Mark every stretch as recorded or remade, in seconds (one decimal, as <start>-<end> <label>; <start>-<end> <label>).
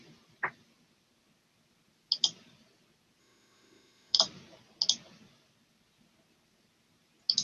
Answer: 0.0-3.2 recorded; 3.2-4.2 remade; 4.2-7.4 recorded